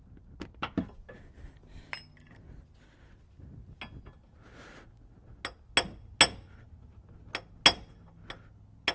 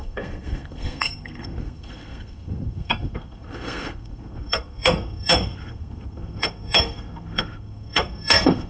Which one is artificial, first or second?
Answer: second